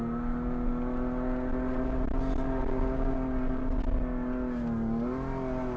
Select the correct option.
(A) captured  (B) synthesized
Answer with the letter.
A